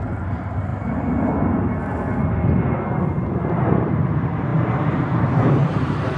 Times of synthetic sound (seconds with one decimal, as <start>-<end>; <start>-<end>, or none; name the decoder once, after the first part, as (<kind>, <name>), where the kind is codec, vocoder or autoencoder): 0.0-0.7 (vocoder, BigVGAN v2); 3.0-6.2